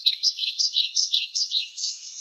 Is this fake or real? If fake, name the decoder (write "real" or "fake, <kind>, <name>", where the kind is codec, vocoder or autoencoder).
fake, codec, SNAC